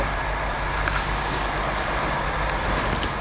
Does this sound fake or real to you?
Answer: real